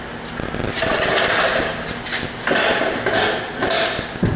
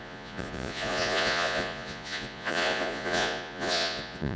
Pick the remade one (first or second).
second